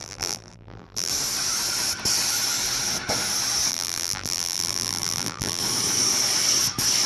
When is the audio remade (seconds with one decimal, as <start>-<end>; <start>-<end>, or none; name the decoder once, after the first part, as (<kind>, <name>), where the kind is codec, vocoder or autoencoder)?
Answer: 0.0-1.1 (vocoder, BigVGAN v2); 3.7-5.6